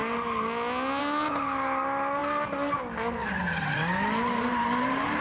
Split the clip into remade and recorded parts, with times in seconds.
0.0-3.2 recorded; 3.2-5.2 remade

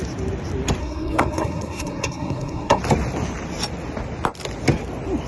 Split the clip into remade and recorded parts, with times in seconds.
0.0-0.8 recorded; 0.8-2.8 remade; 2.8-5.3 recorded

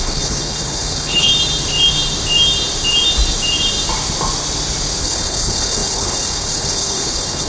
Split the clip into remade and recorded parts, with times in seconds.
0.0-1.3 remade; 1.3-5.0 recorded; 5.0-7.5 remade